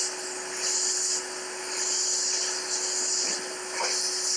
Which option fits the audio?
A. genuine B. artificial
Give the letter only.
A